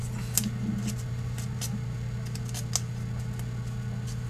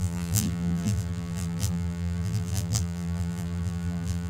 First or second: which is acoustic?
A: first